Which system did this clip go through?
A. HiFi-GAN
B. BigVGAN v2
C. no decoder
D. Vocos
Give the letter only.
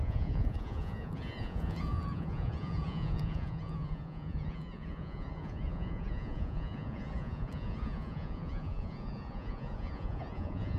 D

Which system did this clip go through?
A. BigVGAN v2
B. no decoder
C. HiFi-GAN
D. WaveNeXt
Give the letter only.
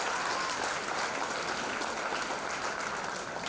B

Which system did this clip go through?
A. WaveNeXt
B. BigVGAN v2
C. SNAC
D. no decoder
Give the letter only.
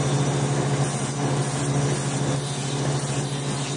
D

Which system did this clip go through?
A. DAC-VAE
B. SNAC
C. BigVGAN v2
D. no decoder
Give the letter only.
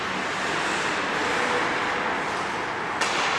D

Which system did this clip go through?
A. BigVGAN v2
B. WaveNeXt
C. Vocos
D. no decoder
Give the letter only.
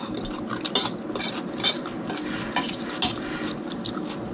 D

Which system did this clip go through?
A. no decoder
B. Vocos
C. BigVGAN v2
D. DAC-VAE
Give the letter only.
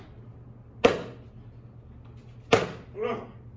A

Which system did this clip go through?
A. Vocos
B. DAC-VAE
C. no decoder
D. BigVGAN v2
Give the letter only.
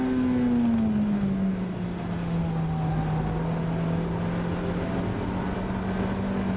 C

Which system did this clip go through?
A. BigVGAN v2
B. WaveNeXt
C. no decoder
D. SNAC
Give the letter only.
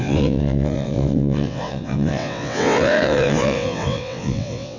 B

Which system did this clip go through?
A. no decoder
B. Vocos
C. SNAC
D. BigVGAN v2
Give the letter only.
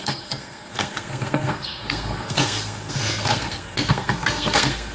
C